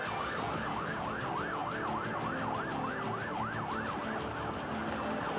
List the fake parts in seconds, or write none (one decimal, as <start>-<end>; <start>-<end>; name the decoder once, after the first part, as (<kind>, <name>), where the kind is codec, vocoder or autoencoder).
none